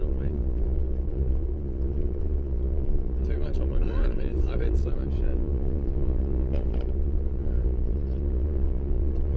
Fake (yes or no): yes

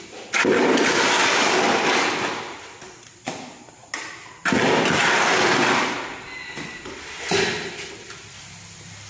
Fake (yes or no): no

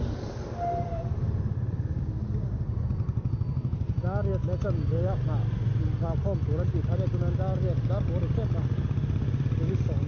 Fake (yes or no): no